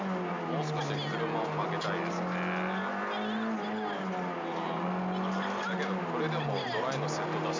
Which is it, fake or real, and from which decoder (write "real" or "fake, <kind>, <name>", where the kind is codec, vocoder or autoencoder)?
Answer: real